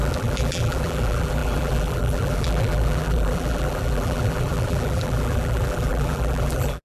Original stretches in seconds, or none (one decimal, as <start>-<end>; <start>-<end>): none